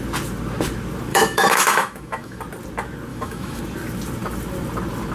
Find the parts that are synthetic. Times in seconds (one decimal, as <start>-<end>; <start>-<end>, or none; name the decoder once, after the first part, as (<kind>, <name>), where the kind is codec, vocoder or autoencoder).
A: 1.1-2.4 (autoencoder, DAC-VAE); 3.1-3.6